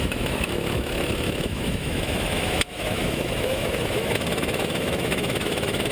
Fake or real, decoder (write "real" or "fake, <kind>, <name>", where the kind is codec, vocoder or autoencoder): fake, autoencoder, DAC-VAE